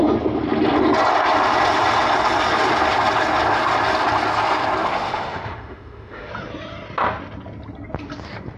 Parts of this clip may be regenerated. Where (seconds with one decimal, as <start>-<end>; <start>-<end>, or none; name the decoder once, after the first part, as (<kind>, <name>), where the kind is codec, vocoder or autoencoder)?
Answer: 4.8-6.3 (autoencoder, DAC-VAE)